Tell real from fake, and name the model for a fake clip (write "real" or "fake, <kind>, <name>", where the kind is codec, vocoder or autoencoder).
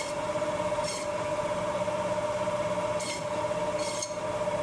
fake, vocoder, BigVGAN v2